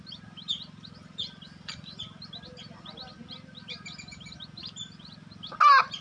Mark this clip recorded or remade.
recorded